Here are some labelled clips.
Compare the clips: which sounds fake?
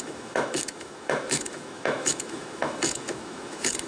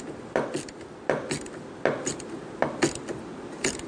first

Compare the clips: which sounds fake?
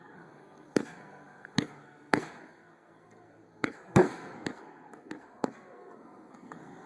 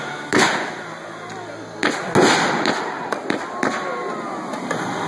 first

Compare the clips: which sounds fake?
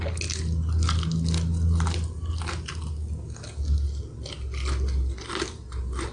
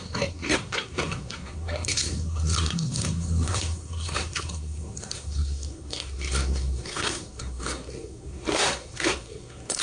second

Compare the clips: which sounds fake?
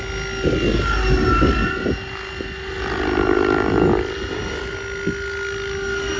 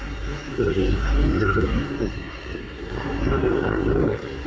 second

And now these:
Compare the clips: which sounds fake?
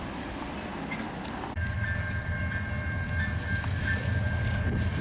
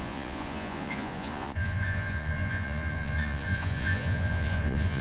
second